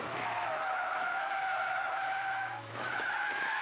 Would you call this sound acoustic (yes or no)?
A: no